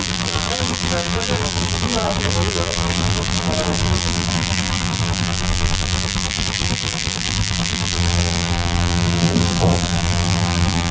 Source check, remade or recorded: remade